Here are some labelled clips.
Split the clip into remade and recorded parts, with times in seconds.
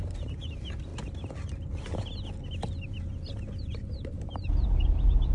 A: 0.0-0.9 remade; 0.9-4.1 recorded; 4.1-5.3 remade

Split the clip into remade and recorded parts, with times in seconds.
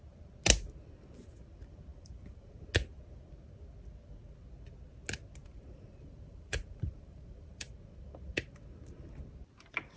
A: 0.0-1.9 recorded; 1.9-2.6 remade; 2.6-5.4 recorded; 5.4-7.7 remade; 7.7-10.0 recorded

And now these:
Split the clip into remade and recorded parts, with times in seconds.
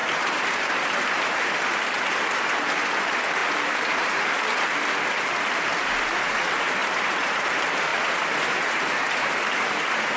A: 0.0-1.6 remade; 1.6-6.8 recorded; 6.8-7.5 remade; 7.5-7.9 recorded; 7.9-9.3 remade; 9.3-10.2 recorded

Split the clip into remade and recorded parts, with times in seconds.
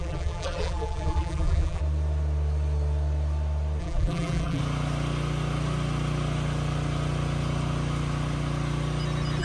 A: 0.0-1.8 remade; 1.8-3.8 recorded; 3.8-4.6 remade; 4.6-9.4 recorded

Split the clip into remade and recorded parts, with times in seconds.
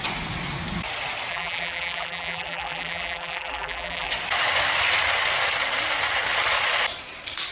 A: 0.0-1.3 recorded; 1.3-4.1 remade; 4.1-7.5 recorded